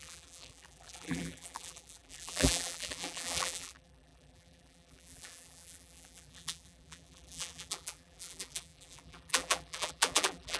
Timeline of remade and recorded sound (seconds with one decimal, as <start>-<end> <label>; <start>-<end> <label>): 0.0-10.6 remade